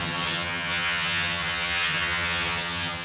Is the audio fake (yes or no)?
yes